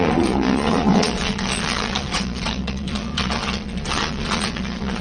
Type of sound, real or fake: fake